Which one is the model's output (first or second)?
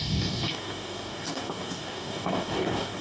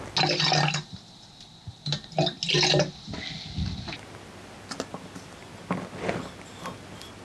first